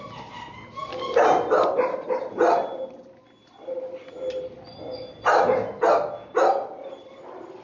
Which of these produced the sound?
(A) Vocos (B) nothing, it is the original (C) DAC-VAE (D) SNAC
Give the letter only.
B